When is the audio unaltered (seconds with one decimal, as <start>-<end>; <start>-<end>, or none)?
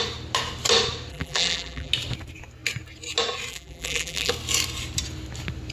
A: 0.0-1.1; 1.9-3.5; 4.3-5.7